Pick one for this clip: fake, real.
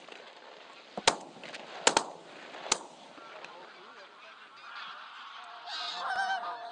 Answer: real